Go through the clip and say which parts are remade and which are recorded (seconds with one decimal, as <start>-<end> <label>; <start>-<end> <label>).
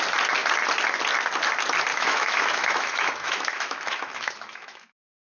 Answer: 0.0-1.9 recorded; 1.9-5.3 remade